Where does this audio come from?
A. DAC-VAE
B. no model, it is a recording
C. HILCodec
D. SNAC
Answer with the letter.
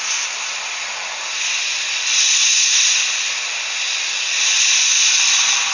B